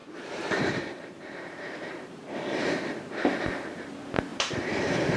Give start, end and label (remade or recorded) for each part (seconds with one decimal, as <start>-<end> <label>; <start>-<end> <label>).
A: 0.0-3.1 remade; 3.1-4.3 recorded; 4.3-5.2 remade